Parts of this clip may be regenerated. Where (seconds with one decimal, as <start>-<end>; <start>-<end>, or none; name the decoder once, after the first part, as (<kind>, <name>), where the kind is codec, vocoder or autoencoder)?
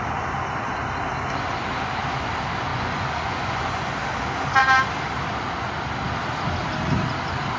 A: 2.7-3.9 (vocoder, Vocos)